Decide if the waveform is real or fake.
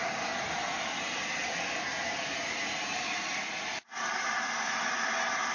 real